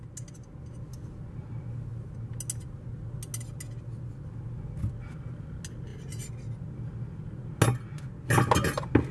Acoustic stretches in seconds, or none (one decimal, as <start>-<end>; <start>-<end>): 0.0-9.1